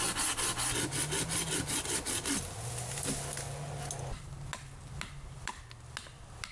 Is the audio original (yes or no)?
yes